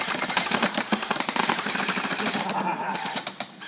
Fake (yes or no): yes